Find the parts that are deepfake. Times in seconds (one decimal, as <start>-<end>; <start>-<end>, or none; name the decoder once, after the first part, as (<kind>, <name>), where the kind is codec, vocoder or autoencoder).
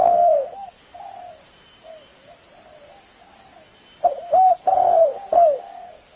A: 0.0-0.8 (codec, SNAC); 4.5-6.2